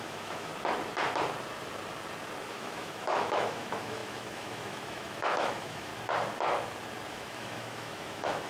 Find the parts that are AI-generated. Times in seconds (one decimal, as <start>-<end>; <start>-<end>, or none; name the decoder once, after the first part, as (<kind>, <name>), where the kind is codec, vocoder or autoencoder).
0.0-0.5 (autoencoder, DAC-VAE); 2.5-5.9; 7.1-8.5